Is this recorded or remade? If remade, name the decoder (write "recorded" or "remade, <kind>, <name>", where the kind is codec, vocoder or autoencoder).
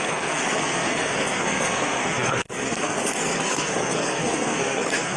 remade, codec, SNAC